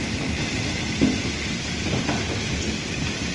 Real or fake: real